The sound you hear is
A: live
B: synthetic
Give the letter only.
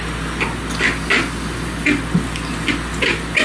A